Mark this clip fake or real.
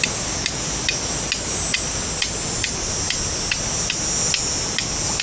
real